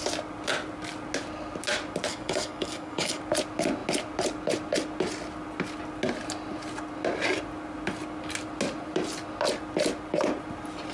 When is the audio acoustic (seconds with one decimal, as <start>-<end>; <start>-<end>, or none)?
0.0-2.1; 3.2-10.9